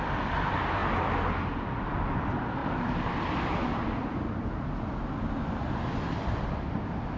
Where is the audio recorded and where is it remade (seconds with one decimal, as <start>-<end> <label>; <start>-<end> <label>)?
0.0-7.2 recorded